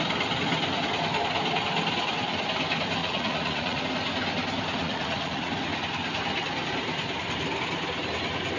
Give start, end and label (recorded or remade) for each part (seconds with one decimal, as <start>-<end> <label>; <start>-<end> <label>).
0.0-3.0 recorded; 3.0-3.8 remade; 3.8-4.8 recorded; 4.8-5.5 remade; 5.5-8.6 recorded